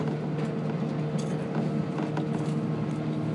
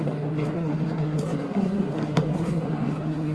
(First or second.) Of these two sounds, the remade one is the second